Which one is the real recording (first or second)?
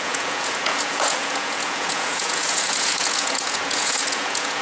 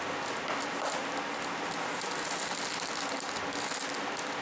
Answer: second